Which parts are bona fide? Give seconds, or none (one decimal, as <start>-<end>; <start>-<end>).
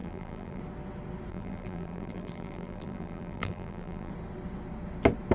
0.6-1.3; 4.1-5.3